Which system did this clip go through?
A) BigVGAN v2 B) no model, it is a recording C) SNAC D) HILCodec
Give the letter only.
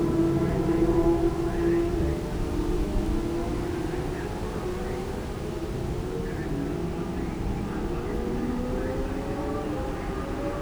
B